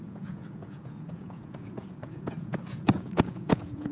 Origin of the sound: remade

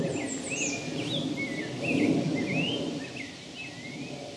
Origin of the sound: recorded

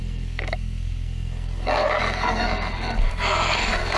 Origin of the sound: remade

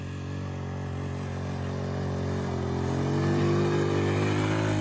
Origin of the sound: recorded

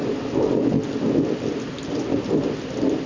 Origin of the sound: recorded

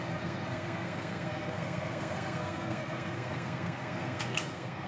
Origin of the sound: remade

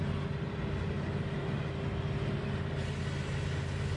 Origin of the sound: recorded